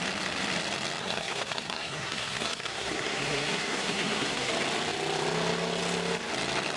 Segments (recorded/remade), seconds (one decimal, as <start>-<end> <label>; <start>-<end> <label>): 0.0-1.0 recorded; 1.0-4.5 remade; 4.5-6.8 recorded